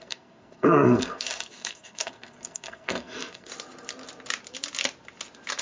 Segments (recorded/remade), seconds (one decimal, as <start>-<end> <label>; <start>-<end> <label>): 0.0-3.5 remade; 3.5-5.6 recorded